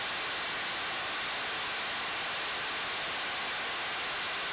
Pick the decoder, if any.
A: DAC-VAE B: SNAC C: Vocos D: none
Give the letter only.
D